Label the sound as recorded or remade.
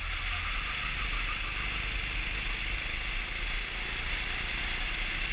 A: recorded